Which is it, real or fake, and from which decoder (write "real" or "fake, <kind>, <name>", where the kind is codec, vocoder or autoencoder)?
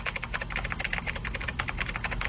real